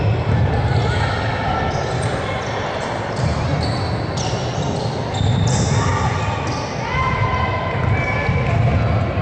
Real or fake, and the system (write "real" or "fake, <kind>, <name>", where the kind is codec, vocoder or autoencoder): real